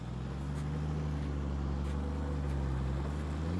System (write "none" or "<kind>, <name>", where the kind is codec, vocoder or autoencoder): none